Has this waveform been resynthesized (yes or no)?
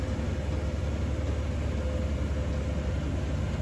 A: no